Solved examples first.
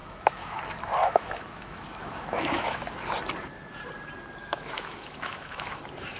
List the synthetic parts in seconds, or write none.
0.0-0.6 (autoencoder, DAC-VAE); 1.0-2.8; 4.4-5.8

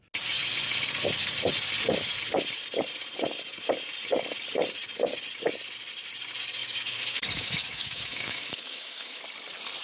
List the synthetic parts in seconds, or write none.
6.6-9.2 (autoencoder, DAC-VAE)

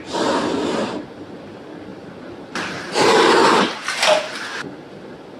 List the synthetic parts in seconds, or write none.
none